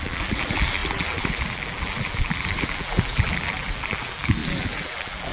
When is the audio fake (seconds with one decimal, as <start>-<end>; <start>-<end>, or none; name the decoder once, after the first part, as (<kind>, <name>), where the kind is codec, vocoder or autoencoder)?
0.0-5.3 (vocoder, BigVGAN v2)

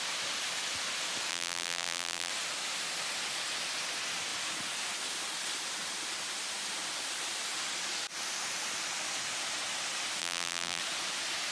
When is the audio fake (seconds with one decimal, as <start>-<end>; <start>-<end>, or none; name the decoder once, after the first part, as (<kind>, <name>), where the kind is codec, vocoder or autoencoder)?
1.3-2.3 (vocoder, BigVGAN v2); 10.2-10.8

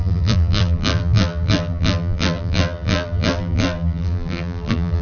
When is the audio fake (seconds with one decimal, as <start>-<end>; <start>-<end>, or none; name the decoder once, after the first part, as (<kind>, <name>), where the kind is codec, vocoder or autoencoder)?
0.0-5.0 (vocoder, BigVGAN v2)

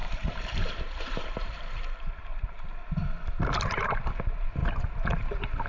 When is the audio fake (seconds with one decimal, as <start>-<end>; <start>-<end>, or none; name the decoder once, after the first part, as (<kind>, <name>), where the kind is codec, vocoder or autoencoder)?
0.0-2.7 (vocoder, BigVGAN v2); 4.6-5.2

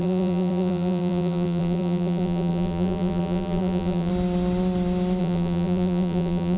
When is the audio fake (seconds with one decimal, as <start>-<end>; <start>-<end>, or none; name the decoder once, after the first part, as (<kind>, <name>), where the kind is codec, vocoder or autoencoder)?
0.0-4.1 (vocoder, BigVGAN v2); 5.2-6.6

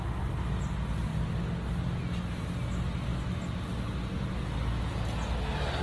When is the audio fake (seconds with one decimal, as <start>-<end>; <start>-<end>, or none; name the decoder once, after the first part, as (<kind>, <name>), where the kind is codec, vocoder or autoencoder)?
none

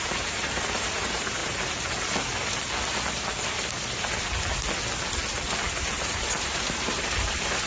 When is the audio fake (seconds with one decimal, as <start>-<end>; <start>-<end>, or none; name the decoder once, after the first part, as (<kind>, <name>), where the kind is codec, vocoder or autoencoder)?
0.0-1.4 (vocoder, BigVGAN v2); 5.7-7.7